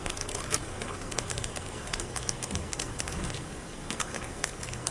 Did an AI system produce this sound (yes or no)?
yes